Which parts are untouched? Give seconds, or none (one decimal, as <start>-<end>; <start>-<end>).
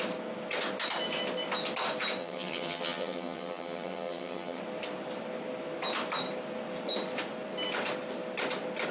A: 0.0-2.2; 4.6-8.9